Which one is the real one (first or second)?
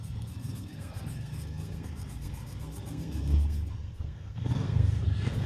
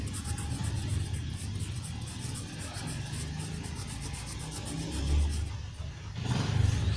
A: second